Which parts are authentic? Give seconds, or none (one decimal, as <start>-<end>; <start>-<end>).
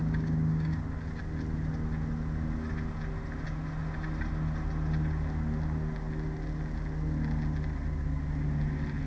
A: 0.8-9.1